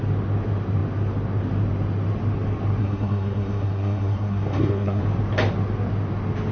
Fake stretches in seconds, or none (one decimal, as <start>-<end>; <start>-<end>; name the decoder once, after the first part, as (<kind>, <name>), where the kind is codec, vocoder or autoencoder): 2.8-5.0 (codec, SNAC)